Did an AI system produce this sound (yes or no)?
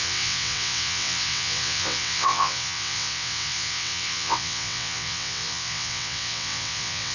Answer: yes